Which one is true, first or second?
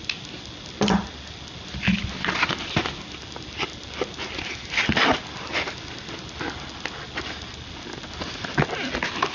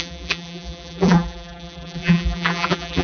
first